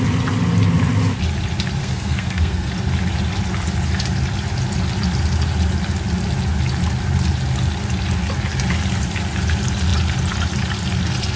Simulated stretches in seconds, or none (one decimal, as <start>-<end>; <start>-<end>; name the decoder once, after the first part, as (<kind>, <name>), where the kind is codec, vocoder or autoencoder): 1.8-2.7 (codec, SNAC)